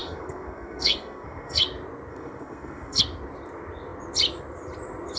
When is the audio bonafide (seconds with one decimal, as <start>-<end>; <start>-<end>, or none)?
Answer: 1.6-2.1; 3.0-5.2